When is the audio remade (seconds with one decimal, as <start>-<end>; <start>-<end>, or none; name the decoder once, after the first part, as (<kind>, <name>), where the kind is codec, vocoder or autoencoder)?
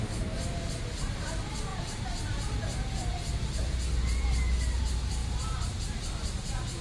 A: none